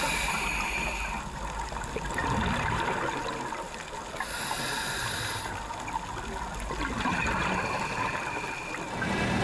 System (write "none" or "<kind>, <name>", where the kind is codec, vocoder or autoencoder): none